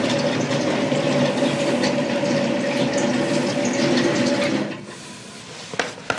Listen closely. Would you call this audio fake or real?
real